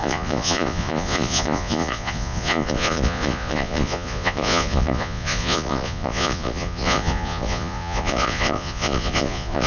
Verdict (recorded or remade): remade